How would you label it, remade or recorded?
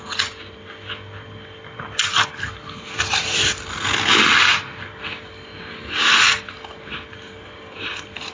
recorded